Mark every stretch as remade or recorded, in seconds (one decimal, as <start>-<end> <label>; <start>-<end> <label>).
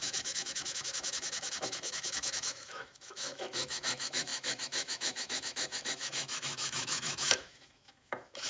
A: 0.0-8.5 remade